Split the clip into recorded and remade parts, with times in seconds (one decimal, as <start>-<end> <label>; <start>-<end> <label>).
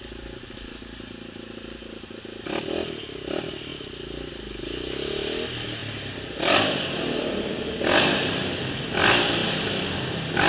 0.0-10.5 recorded